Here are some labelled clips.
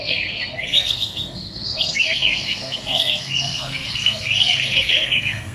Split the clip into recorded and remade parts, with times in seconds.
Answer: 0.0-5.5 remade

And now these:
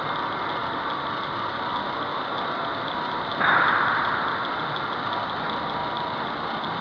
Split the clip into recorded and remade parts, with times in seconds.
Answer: 0.0-6.8 recorded

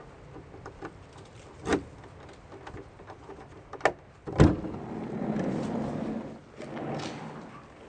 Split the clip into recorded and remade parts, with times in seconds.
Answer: 0.0-7.9 recorded

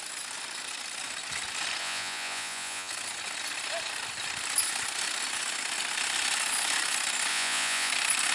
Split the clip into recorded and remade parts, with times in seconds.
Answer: 0.0-1.8 recorded; 1.8-2.9 remade; 2.9-7.3 recorded; 7.3-7.9 remade; 7.9-8.3 recorded

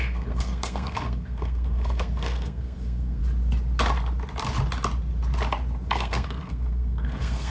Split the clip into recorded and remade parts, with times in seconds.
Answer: 0.0-3.2 remade; 3.2-5.9 recorded; 5.9-7.5 remade